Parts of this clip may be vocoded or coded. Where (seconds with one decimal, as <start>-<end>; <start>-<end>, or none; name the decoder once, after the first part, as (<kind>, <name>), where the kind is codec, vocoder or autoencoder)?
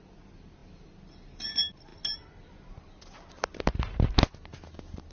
none